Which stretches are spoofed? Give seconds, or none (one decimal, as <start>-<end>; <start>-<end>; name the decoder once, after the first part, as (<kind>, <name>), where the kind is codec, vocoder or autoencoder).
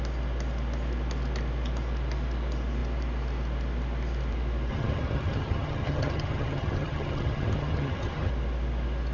4.7-8.3 (vocoder, HiFi-GAN)